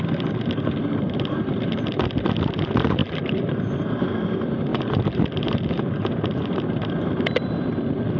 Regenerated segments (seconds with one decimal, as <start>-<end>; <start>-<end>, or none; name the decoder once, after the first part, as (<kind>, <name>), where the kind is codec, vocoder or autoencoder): 3.0-4.1 (vocoder, BigVGAN v2); 4.7-6.9